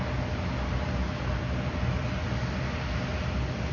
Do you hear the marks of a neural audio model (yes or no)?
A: no